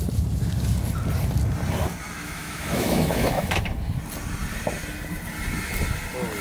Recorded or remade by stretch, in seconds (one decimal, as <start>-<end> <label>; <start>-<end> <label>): 0.0-2.2 recorded; 2.2-3.6 remade; 3.6-6.4 recorded